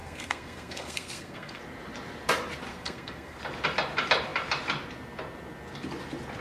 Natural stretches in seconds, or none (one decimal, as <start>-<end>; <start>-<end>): 1.6-2.7; 3.4-6.4